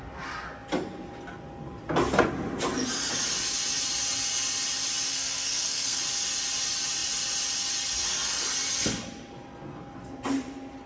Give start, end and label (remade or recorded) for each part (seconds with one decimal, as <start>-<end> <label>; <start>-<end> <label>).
0.0-5.1 recorded; 5.1-6.0 remade; 6.0-10.9 recorded